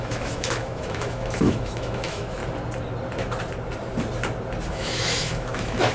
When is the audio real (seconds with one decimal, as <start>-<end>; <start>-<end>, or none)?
2.4-4.7